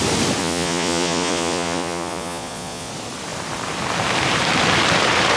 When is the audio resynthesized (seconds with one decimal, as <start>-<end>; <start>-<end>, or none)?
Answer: 0.4-2.9